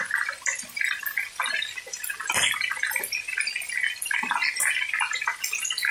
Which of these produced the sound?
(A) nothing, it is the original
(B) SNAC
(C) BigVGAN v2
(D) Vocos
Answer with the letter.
A